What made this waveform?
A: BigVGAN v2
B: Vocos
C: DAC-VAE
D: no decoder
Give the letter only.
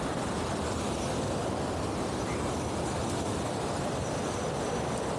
D